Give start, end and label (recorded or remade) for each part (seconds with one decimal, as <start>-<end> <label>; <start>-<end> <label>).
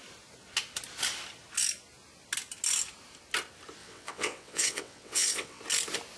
0.0-3.8 recorded; 3.8-5.6 remade; 5.6-6.2 recorded